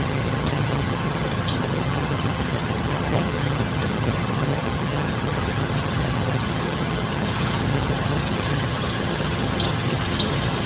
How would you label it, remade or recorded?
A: remade